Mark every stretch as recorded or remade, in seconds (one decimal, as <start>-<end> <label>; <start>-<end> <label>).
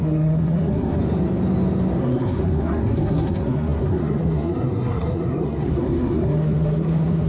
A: 0.0-1.0 remade; 1.0-2.0 recorded; 2.0-7.3 remade